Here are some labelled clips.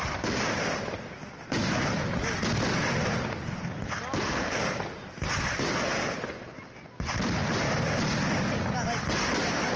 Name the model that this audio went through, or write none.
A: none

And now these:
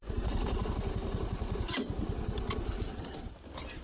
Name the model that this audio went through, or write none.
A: vocoder, BigVGAN v2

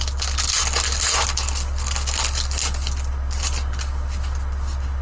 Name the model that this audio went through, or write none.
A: none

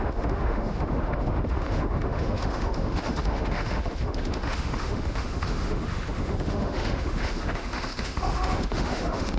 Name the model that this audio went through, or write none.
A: autoencoder, DAC-VAE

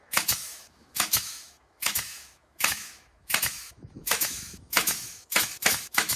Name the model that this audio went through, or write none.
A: autoencoder, DAC-VAE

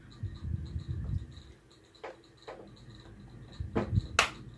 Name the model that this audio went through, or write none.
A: none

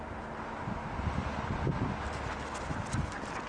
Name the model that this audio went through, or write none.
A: none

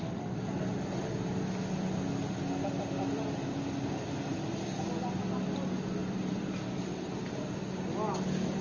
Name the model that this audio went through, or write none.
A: none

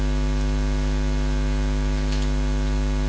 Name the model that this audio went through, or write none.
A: none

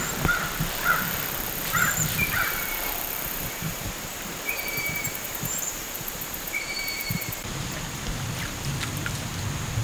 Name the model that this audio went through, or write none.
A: vocoder, BigVGAN v2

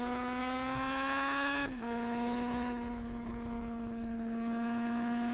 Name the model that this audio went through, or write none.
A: codec, HILCodec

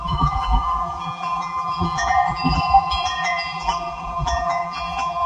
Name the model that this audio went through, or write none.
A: vocoder, BigVGAN v2